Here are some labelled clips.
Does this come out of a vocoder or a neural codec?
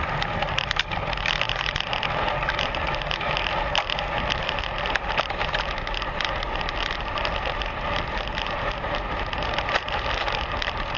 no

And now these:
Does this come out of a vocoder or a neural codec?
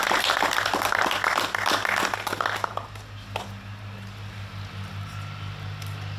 no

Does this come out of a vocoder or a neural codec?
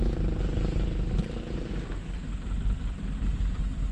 no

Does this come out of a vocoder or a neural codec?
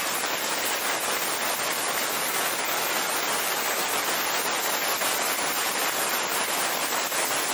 no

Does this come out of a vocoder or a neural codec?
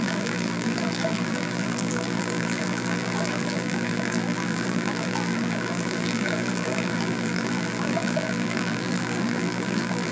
yes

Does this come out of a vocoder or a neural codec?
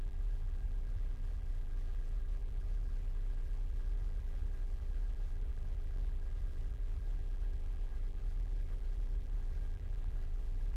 yes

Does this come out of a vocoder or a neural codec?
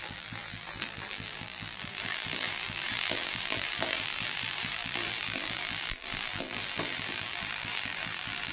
yes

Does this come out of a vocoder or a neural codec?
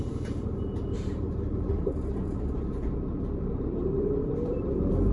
yes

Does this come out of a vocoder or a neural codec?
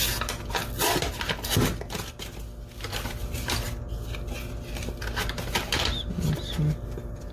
no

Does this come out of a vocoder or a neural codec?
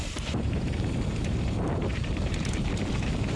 yes